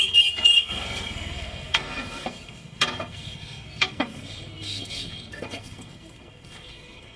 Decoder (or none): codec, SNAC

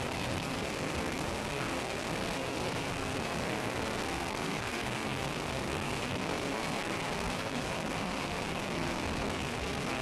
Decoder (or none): codec, SNAC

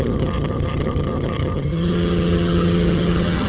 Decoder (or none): vocoder, HiFi-GAN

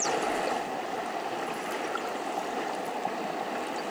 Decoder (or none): none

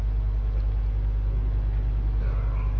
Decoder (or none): none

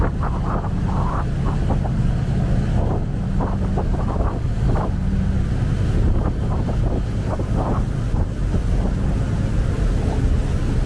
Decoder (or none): none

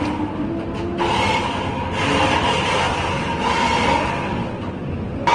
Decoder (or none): none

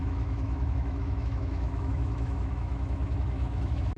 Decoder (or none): autoencoder, DAC-VAE